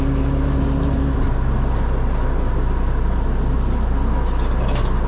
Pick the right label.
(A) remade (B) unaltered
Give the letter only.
B